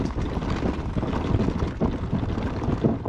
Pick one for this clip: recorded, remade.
recorded